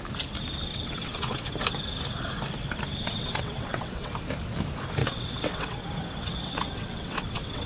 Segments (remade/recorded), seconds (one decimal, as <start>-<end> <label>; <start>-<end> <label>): 0.0-0.7 recorded; 0.7-1.4 remade; 1.4-2.9 recorded; 2.9-4.1 remade; 4.1-5.0 recorded; 5.0-5.8 remade; 5.8-6.2 recorded; 6.2-7.7 remade